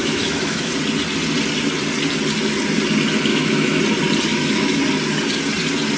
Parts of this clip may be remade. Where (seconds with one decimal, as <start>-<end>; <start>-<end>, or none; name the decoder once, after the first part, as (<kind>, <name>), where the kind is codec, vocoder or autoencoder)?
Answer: 0.0-0.7 (autoencoder, DAC-VAE); 3.3-3.8; 4.3-4.8